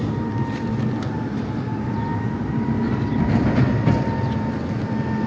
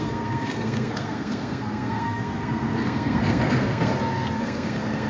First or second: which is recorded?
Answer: first